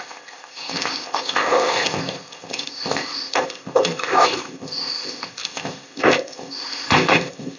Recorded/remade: remade